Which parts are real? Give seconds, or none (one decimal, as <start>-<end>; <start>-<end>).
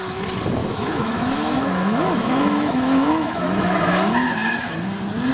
0.0-0.6; 3.8-5.3